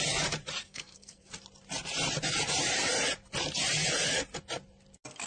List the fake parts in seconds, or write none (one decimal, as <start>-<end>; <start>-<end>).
0.6-1.3